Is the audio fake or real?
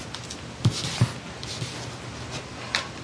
real